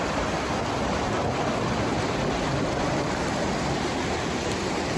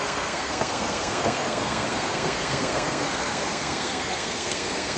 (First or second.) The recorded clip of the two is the first